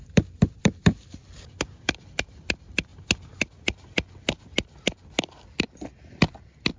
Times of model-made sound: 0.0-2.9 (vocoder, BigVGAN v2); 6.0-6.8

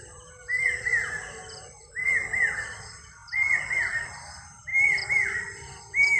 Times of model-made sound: 0.0-0.9 (vocoder, BigVGAN v2); 2.6-6.2